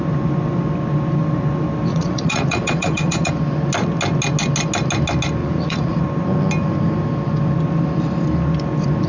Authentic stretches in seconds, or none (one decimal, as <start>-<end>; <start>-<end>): 0.0-1.9; 3.3-5.4; 6.0-9.1